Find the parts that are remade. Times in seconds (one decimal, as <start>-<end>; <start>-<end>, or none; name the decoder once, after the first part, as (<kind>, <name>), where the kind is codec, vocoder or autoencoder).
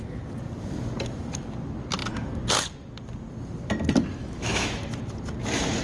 4.2-4.8 (autoencoder, DAC-VAE)